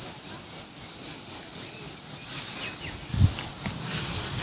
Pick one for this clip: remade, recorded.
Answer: recorded